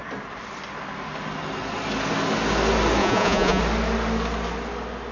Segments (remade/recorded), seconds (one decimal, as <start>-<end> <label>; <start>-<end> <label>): 0.0-3.0 recorded; 3.0-3.6 remade; 3.6-5.1 recorded